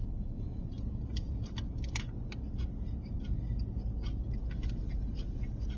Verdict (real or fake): real